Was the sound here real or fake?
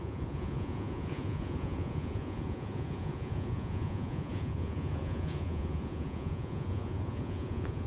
fake